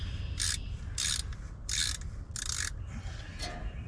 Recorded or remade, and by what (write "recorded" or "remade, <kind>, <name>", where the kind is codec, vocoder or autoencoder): recorded